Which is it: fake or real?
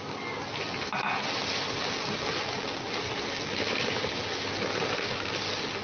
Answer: real